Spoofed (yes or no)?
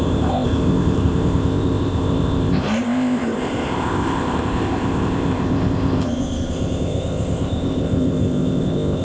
yes